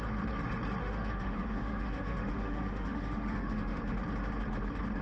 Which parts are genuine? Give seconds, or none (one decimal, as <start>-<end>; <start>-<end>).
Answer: 0.0-0.8; 3.8-5.0